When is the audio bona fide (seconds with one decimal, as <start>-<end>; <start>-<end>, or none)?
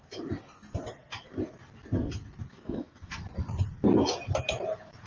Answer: 0.0-2.5; 3.1-5.1